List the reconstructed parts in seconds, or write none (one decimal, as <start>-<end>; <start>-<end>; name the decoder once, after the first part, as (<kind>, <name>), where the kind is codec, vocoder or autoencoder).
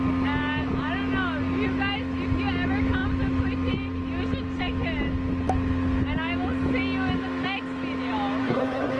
8.4-9.0 (codec, SNAC)